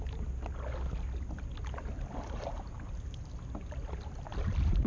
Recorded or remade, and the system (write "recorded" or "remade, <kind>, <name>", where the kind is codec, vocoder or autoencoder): recorded